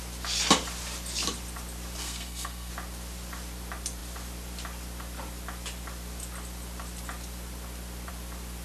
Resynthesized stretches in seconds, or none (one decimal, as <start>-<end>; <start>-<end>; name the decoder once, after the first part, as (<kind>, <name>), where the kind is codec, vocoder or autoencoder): 2.0-2.7 (codec, SNAC)